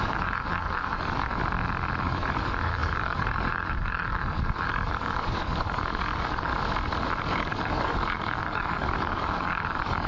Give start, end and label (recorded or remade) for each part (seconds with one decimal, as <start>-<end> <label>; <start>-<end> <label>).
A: 0.0-1.4 remade; 1.4-2.0 recorded; 2.0-6.5 remade; 6.5-7.2 recorded; 7.2-10.1 remade